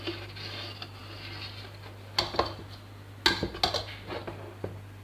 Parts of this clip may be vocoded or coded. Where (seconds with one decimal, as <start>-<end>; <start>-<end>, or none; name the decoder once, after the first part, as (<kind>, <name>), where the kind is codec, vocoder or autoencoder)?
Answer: none